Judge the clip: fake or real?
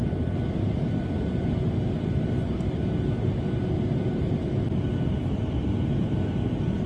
real